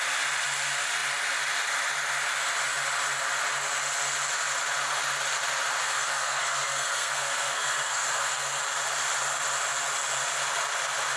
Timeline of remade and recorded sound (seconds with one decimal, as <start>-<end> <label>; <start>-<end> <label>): 0.0-5.8 recorded; 5.8-8.6 remade; 8.6-11.2 recorded